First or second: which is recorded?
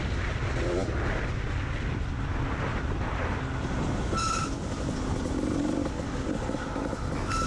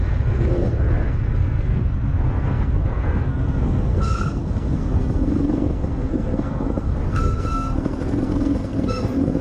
first